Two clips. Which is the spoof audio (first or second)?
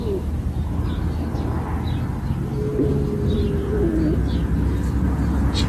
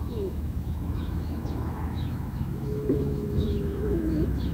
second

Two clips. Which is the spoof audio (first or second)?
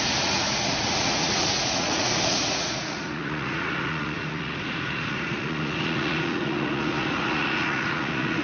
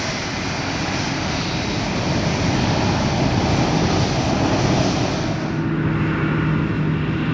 first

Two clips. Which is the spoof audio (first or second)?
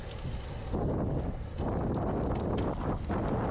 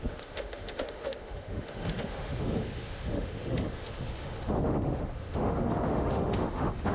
second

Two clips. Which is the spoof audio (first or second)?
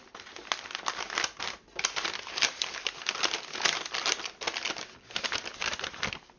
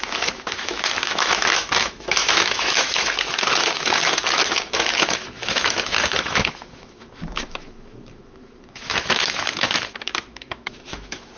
second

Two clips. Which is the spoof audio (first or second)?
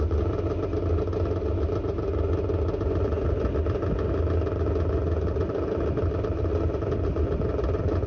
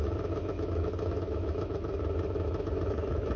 second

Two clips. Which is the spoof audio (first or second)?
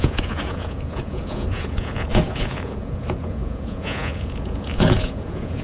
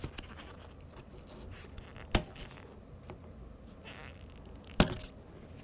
first